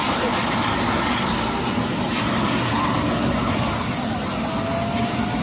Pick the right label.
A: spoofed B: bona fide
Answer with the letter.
B